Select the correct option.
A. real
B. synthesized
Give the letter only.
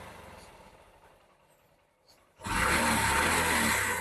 A